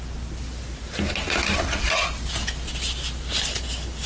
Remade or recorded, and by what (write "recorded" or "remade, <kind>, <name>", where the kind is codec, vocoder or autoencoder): recorded